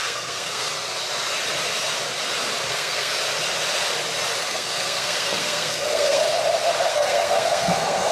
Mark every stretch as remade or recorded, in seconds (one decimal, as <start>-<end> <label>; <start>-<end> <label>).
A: 0.0-0.7 remade; 0.7-2.7 recorded; 2.7-3.1 remade; 3.1-4.4 recorded; 4.4-6.2 remade; 6.2-6.9 recorded; 6.9-8.1 remade